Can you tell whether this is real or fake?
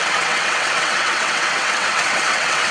fake